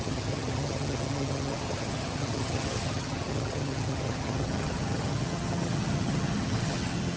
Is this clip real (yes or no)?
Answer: no